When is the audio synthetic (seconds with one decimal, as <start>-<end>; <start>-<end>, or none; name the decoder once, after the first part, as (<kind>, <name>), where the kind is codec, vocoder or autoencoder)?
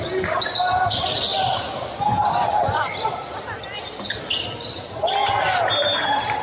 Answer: none